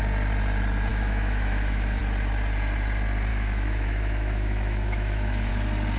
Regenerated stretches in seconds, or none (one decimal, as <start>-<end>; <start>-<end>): 0.9-2.0; 3.3-5.5